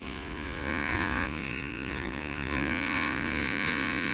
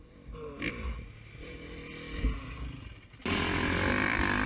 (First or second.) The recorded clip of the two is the second